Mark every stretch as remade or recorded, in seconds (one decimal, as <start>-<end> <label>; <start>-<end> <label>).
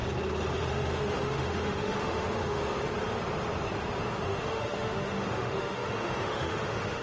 0.0-0.6 recorded; 0.6-2.6 remade; 2.6-4.2 recorded; 4.2-7.0 remade